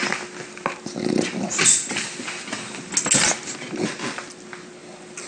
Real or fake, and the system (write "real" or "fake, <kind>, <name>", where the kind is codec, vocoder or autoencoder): real